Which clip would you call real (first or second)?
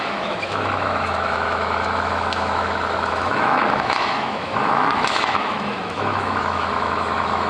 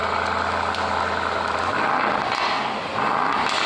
second